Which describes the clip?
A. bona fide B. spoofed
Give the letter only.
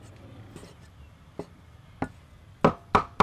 A